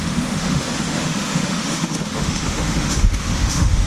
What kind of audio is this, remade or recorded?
remade